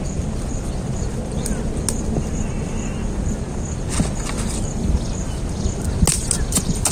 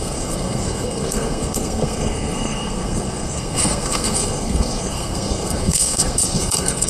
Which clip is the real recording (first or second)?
first